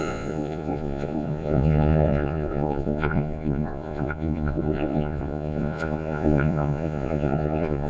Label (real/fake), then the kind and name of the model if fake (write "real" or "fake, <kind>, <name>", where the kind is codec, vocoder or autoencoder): fake, vocoder, Vocos